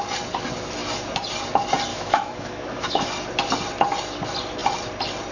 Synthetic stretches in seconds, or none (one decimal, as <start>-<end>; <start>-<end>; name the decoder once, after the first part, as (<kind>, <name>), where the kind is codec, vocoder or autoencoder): 1.9-3.1 (autoencoder, DAC-VAE)

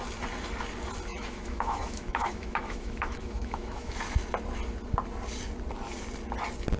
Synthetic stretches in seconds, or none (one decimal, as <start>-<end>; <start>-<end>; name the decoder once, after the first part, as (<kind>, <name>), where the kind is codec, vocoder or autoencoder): 1.1-3.9 (autoencoder, DAC-VAE)

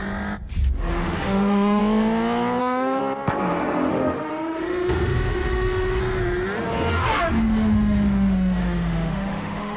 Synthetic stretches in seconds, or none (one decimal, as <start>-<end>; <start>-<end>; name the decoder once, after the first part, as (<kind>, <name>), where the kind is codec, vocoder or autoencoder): 0.9-1.8 (autoencoder, DAC-VAE); 2.6-3.0; 3.9-6.0; 6.9-9.8

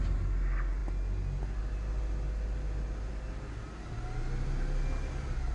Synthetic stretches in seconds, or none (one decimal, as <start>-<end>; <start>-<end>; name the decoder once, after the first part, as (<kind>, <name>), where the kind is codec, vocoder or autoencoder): none

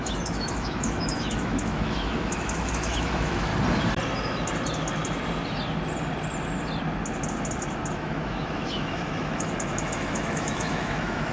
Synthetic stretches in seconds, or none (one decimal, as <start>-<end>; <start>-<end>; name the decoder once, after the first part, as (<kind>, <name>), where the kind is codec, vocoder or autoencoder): 0.0-3.5 (autoencoder, DAC-VAE); 7.9-11.3